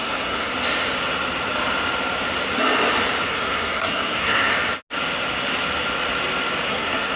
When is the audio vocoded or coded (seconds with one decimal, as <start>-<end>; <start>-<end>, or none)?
0.0-0.5; 3.3-4.5; 6.7-7.2